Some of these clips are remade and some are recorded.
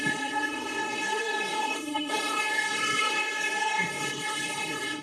remade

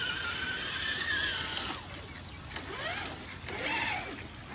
recorded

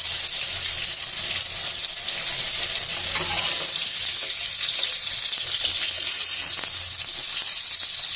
recorded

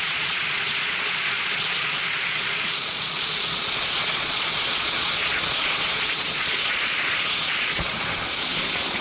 remade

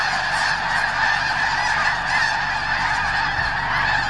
recorded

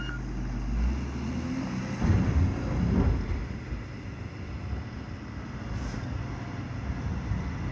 recorded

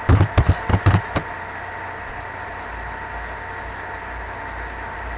recorded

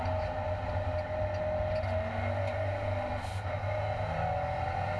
recorded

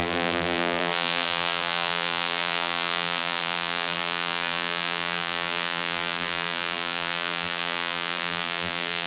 remade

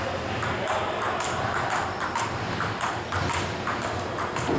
recorded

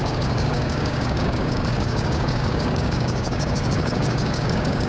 remade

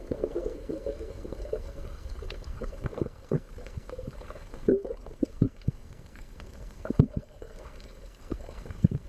remade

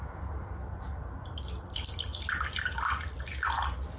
recorded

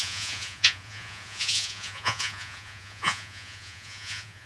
remade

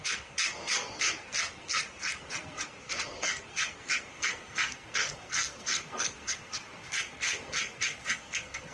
remade